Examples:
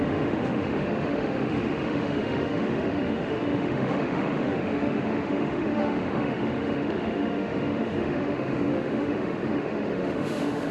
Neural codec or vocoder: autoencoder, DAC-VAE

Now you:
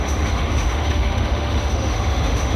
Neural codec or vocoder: autoencoder, DAC-VAE